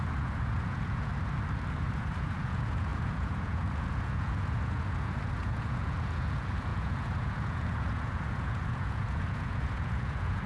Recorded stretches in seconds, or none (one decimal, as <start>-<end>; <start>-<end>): 1.1-1.8